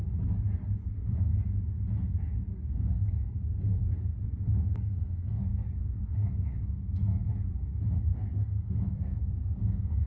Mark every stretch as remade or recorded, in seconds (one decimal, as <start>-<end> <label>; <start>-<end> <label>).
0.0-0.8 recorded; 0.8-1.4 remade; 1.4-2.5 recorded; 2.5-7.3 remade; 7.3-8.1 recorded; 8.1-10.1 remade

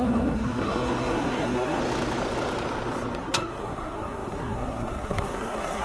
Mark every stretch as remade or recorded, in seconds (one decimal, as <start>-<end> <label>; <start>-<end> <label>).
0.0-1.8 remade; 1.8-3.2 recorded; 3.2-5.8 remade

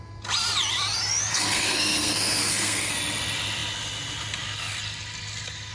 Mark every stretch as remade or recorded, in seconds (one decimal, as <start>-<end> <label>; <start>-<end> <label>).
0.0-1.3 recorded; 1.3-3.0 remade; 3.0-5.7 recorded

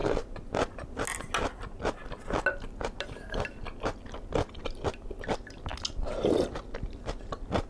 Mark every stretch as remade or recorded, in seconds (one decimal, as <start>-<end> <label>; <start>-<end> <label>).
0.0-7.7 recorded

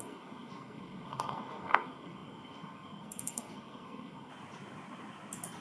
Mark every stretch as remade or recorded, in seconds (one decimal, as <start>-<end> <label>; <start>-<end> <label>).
0.0-4.3 remade; 4.3-5.6 recorded

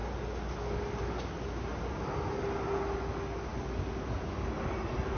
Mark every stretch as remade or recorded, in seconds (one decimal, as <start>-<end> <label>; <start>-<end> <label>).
0.0-5.2 recorded

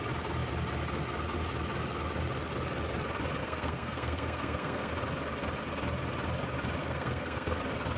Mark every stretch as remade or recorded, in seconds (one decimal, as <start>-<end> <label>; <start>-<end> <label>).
0.0-3.4 recorded; 3.4-4.9 remade; 4.9-6.8 recorded; 6.8-7.6 remade; 7.6-8.0 recorded

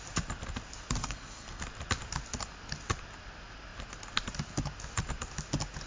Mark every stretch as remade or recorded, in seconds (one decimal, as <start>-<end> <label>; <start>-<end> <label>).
0.0-1.0 recorded; 1.0-1.6 remade; 1.6-5.9 recorded